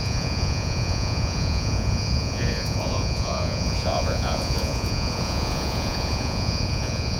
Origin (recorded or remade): remade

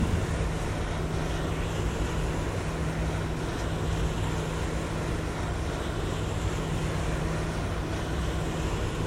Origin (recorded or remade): recorded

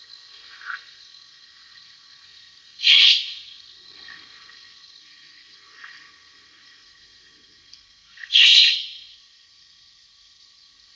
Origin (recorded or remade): remade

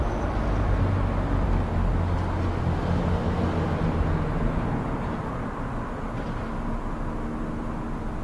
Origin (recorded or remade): recorded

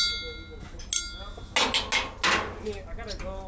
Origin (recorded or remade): recorded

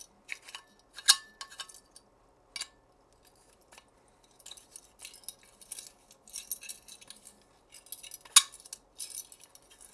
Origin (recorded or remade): recorded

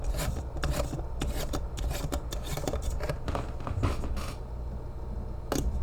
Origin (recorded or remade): recorded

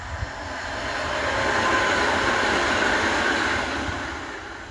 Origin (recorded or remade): recorded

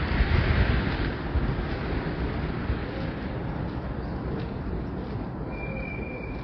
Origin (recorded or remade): recorded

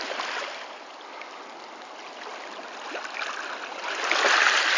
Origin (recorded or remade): recorded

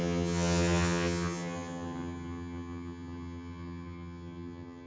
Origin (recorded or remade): remade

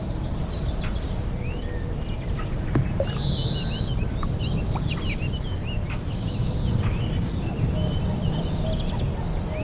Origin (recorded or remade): recorded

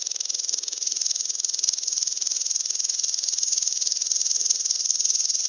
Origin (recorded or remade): remade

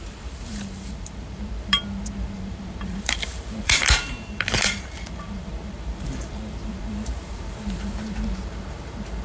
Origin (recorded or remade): remade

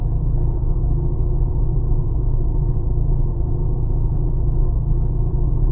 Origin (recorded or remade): remade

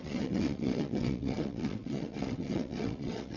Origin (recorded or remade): remade